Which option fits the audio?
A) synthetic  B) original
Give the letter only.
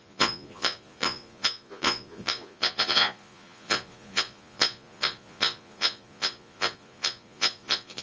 A